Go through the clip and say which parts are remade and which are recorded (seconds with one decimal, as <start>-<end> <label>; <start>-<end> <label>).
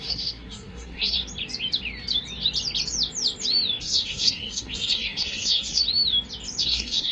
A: 0.0-1.2 remade; 1.2-3.8 recorded; 3.8-5.8 remade; 5.8-6.6 recorded; 6.6-7.1 remade